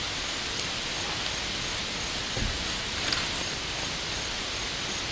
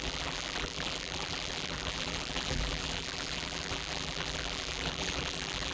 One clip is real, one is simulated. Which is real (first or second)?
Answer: first